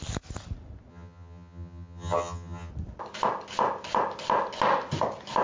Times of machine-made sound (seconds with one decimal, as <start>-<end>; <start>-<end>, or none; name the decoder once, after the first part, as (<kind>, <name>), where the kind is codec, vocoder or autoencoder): 0.9-2.7 (vocoder, HiFi-GAN)